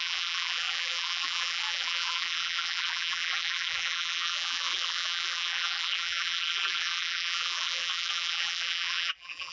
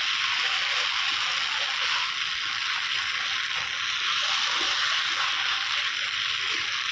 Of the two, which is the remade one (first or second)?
first